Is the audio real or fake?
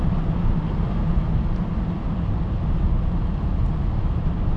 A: real